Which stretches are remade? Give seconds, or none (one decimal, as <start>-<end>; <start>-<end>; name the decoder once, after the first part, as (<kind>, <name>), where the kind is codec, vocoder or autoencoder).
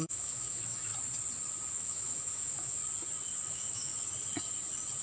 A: 0.0-0.9 (autoencoder, DAC-VAE); 1.7-2.8; 3.5-3.9